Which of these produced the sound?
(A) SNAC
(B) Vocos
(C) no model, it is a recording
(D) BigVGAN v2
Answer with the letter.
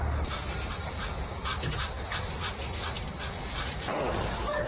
C